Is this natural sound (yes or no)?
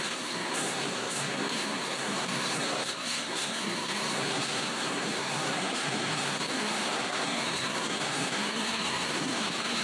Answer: no